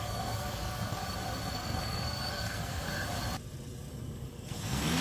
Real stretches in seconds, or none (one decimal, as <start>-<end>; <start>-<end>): 1.0-1.5; 2.9-3.9